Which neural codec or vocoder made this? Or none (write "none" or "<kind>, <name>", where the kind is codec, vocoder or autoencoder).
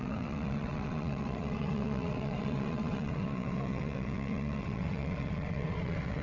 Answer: vocoder, WaveNeXt